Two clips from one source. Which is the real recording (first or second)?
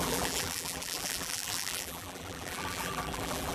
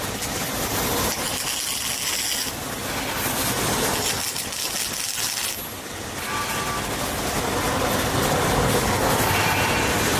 second